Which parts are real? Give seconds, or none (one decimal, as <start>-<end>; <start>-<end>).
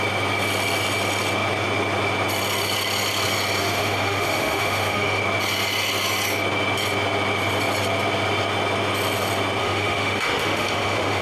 0.0-3.6; 5.2-9.6